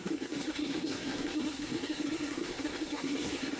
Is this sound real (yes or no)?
no